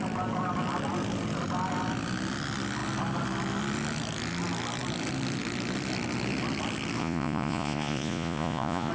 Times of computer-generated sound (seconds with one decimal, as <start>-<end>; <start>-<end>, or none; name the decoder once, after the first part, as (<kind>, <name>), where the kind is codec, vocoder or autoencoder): 7.0-8.9 (vocoder, Vocos)

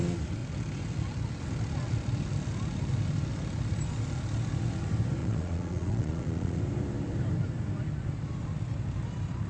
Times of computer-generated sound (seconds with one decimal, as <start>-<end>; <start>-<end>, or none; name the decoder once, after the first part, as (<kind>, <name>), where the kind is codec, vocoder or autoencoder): 5.2-6.6 (vocoder, Vocos)

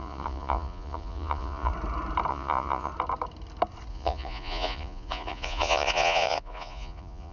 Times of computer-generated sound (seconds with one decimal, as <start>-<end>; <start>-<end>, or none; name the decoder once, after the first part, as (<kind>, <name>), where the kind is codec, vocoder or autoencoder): 0.0-1.7 (vocoder, Vocos); 2.3-2.9; 3.9-7.3

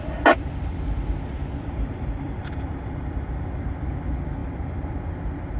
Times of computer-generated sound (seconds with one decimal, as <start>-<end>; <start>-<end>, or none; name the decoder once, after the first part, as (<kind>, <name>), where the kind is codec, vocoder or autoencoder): none

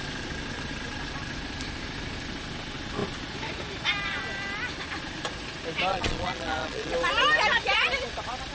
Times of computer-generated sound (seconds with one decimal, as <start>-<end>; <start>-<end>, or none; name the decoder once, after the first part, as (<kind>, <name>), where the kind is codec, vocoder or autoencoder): 5.9-6.9 (vocoder, Vocos)